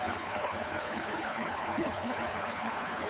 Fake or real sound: fake